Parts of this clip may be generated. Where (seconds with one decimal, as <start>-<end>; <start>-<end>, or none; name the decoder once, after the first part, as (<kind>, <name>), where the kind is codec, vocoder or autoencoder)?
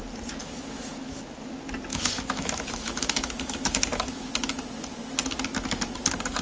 0.4-1.2 (autoencoder, DAC-VAE); 1.9-4.3